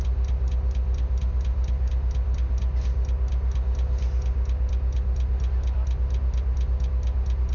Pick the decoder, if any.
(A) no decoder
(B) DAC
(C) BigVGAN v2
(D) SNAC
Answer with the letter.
A